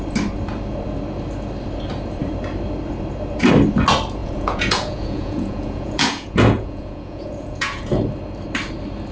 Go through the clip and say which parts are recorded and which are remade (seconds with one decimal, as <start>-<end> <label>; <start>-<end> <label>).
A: 0.0-4.2 recorded; 4.2-7.9 remade; 7.9-9.1 recorded